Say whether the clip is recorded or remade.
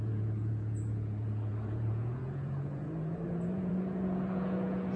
remade